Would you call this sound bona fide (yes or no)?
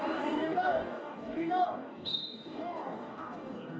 no